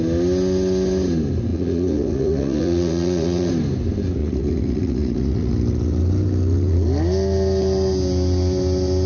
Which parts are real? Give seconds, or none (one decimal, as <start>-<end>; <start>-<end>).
0.0-1.5; 3.5-4.2; 5.5-9.1